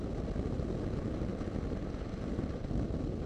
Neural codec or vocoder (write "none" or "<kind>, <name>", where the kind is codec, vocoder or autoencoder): none